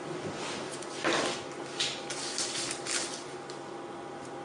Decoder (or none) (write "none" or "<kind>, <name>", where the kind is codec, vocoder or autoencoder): none